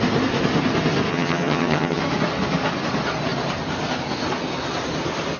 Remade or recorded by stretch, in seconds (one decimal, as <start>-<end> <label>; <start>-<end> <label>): 0.0-1.1 recorded; 1.1-2.0 remade; 2.0-5.4 recorded